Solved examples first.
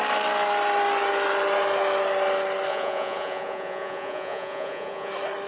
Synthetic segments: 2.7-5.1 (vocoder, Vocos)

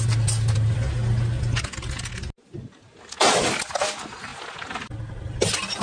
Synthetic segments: none